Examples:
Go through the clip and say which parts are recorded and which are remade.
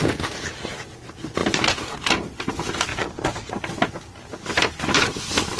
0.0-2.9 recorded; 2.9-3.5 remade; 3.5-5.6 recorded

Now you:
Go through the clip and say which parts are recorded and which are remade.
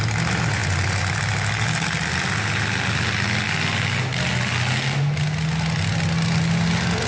0.0-7.1 recorded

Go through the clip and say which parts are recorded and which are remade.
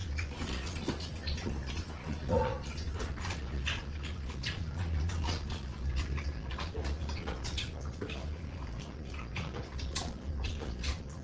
0.0-11.2 remade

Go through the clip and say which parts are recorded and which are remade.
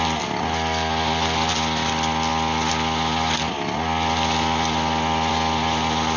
0.0-6.2 recorded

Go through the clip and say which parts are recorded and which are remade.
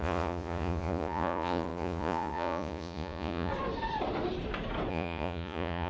0.0-3.5 remade; 3.5-4.9 recorded; 4.9-5.9 remade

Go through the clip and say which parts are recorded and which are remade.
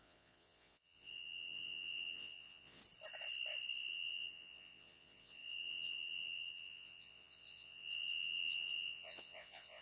0.0-2.8 remade; 2.8-3.9 recorded; 3.9-9.8 remade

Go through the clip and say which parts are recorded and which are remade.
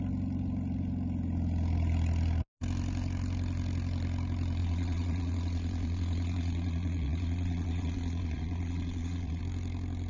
0.0-4.6 recorded; 4.6-9.4 remade; 9.4-10.1 recorded